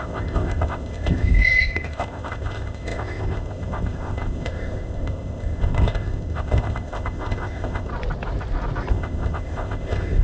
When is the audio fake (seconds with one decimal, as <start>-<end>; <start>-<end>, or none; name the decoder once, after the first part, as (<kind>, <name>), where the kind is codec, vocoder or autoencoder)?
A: 0.0-7.9 (codec, ZipCodec); 8.9-10.2